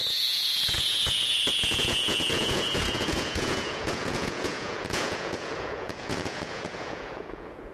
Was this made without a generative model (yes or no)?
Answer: no